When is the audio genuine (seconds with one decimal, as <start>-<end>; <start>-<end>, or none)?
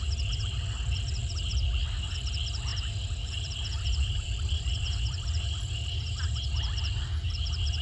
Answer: 0.0-2.7; 6.2-7.8